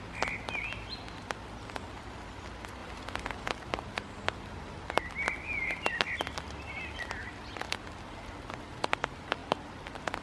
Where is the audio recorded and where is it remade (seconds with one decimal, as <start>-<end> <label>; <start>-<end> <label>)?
0.0-9.4 recorded; 9.4-10.2 remade